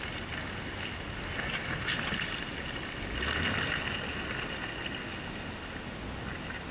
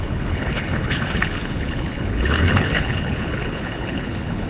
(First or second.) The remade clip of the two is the second